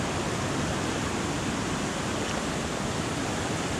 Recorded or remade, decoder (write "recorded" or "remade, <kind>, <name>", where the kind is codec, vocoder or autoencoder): recorded